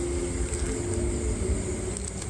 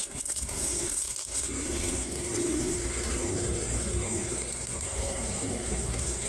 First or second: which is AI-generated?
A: second